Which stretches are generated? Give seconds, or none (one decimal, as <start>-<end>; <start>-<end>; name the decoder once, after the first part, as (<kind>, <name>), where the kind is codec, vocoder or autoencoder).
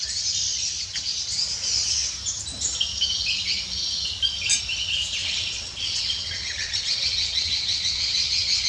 5.2-8.7 (vocoder, Vocos)